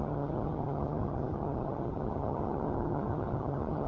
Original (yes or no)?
no